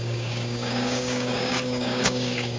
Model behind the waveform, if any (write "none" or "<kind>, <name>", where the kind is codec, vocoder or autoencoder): codec, DAC